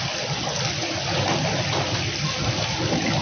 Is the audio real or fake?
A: real